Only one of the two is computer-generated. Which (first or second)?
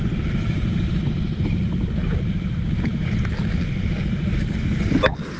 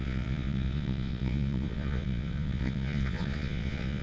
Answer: second